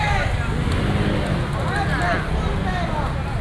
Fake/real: real